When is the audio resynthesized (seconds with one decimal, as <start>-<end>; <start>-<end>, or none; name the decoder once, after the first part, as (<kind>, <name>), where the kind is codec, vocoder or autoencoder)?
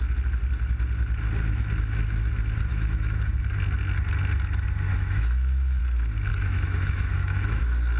2.7-3.4 (autoencoder, DAC-VAE); 4.9-5.8; 6.3-7.6